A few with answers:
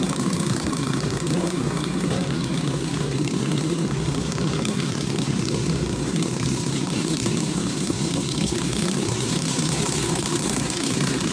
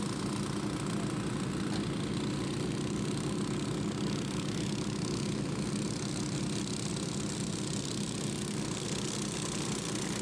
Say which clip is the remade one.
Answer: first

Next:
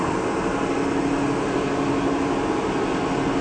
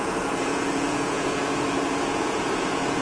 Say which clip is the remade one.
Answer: second